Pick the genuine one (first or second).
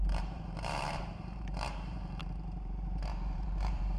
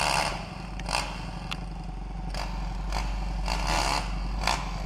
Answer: second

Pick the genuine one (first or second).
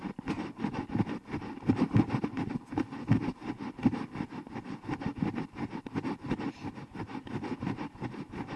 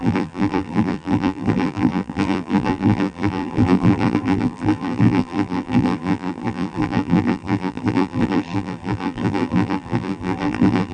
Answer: first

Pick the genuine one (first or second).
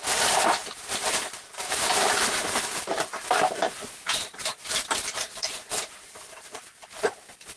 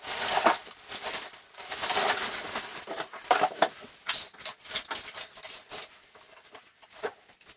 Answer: second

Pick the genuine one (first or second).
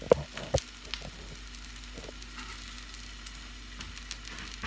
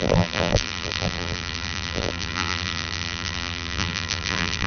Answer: first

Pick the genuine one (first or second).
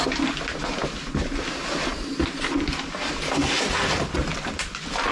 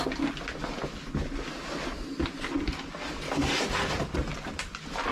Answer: second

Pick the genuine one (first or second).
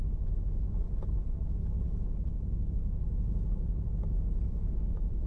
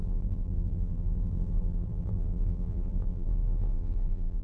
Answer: first